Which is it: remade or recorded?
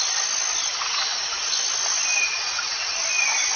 recorded